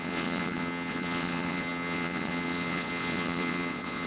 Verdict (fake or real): fake